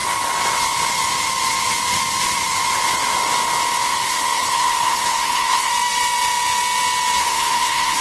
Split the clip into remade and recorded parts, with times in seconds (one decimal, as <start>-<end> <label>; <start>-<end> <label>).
0.0-3.9 recorded; 3.9-5.7 remade; 5.7-7.2 recorded; 7.2-8.0 remade